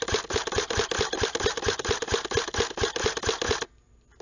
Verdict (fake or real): real